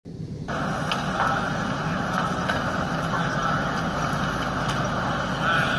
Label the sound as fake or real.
real